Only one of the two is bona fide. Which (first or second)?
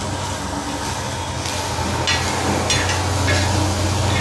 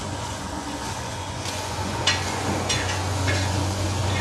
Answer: first